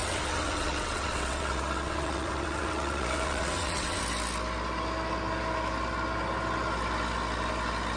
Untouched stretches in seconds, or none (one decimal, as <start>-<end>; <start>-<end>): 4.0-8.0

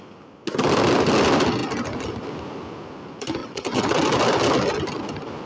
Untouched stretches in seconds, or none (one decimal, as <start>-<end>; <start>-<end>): 0.0-3.4; 4.0-5.5

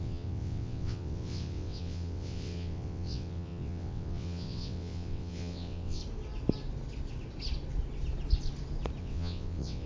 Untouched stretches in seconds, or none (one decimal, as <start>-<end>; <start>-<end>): 6.0-9.0

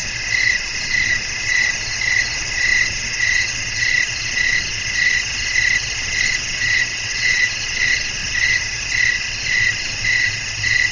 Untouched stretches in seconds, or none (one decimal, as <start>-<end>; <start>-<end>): 0.0-6.9; 7.5-10.9

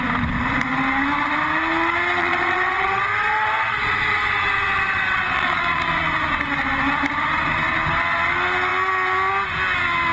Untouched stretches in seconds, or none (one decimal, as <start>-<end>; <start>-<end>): 0.0-2.2; 5.8-10.1